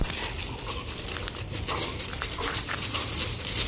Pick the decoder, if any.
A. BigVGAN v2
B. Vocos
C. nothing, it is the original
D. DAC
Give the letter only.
A